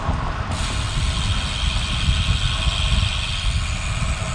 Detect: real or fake real